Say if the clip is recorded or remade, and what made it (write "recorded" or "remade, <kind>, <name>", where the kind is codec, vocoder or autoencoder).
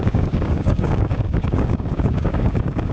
remade, codec, DAC